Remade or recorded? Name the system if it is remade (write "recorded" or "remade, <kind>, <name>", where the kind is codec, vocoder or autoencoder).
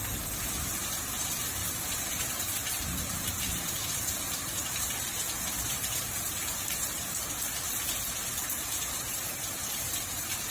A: remade, vocoder, BigVGAN v2